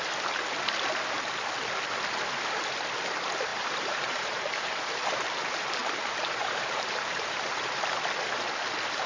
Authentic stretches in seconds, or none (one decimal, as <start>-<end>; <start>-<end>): 0.0-3.5; 5.2-5.8; 7.8-9.1